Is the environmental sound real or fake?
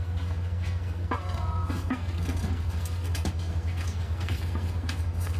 fake